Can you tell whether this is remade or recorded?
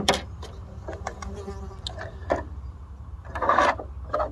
recorded